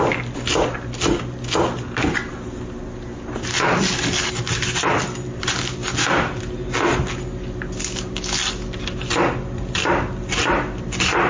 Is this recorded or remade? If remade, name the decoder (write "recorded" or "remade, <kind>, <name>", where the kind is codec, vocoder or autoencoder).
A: recorded